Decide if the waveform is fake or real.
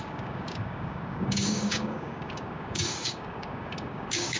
fake